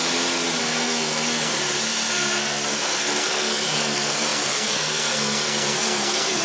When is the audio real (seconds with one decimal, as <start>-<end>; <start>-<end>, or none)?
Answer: 0.0-0.6; 1.5-2.1